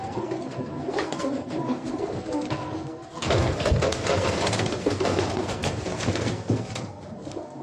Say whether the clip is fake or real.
fake